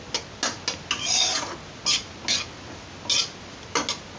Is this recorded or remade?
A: recorded